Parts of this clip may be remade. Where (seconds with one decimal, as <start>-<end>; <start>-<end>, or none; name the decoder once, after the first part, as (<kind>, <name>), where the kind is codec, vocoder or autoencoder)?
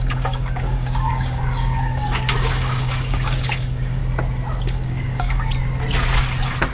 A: 0.0-4.0 (codec, DAC); 4.6-5.5